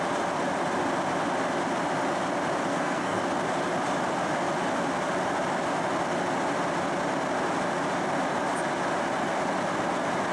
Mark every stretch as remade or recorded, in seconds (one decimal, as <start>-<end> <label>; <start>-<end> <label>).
0.0-2.7 recorded; 2.7-3.2 remade; 3.2-10.3 recorded